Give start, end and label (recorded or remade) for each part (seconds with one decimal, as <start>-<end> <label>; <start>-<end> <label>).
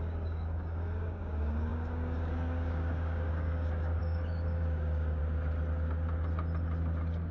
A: 0.0-5.2 remade; 5.2-7.3 recorded